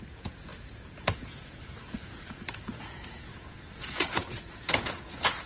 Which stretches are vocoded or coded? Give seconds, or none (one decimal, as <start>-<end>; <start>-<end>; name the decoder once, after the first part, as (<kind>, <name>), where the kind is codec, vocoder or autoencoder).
0.0-5.5 (vocoder, Vocos)

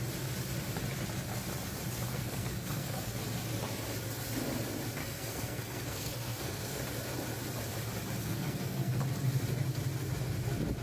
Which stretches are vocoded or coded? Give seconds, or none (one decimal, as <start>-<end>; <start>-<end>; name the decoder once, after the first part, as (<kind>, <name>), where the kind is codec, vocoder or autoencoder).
2.1-3.2 (codec, SNAC); 5.0-6.8; 8.2-9.0